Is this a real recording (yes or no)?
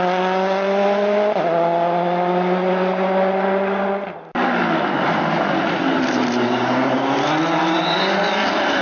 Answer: yes